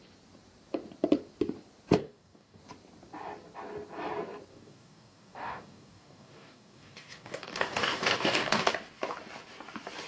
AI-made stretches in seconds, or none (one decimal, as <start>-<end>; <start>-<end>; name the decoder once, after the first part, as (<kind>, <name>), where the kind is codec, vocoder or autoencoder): 2.0-2.6 (codec, DAC); 4.5-8.7